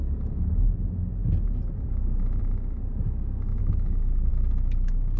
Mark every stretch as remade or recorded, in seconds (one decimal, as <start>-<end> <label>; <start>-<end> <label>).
0.0-3.6 recorded; 3.6-4.3 remade; 4.3-5.2 recorded